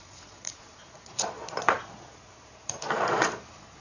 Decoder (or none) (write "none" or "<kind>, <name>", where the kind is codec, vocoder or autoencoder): vocoder, Vocos